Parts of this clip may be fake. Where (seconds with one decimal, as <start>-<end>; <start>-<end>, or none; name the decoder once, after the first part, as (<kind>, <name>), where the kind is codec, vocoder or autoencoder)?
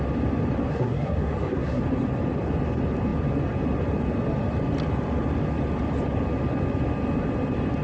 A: 0.7-1.8 (codec, SNAC)